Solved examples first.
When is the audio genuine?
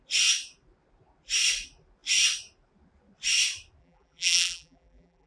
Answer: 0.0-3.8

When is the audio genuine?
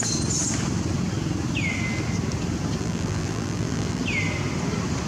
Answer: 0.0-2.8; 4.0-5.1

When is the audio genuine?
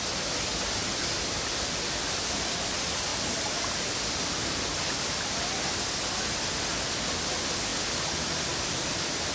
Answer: 0.0-0.8; 2.6-9.3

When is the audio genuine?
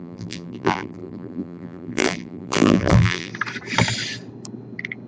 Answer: 3.3-5.1